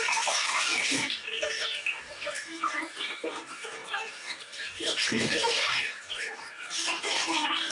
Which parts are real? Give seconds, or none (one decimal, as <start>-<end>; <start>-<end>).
none